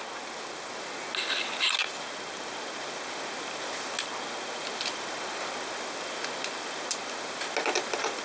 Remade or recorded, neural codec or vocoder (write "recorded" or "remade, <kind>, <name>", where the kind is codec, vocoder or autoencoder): recorded